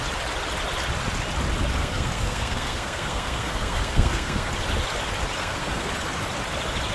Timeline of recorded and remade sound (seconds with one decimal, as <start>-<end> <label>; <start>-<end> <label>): 0.0-1.8 recorded; 1.8-4.5 remade; 4.5-5.4 recorded; 5.4-5.9 remade; 5.9-6.9 recorded